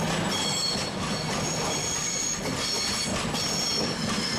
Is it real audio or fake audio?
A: real